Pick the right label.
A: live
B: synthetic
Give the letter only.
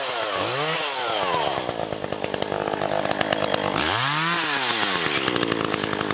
A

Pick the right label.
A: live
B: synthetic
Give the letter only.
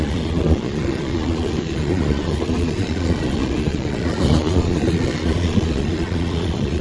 B